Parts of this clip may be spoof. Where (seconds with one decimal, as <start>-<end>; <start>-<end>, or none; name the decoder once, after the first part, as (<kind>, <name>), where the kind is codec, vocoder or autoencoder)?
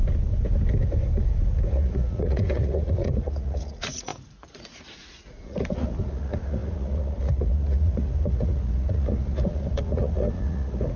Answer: 1.7-11.0 (vocoder, Vocos)